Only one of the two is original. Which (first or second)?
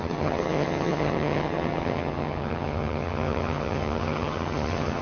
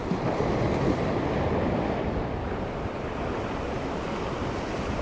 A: second